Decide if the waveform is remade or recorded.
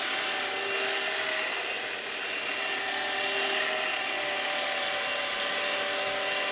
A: recorded